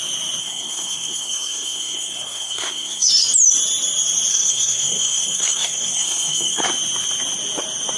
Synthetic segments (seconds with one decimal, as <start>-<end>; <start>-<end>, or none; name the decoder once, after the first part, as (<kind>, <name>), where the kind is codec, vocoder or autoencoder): 0.4-3.1 (codec, SNAC); 4.3-6.6